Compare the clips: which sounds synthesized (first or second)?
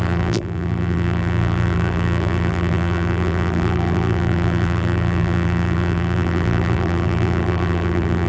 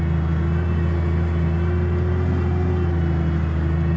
first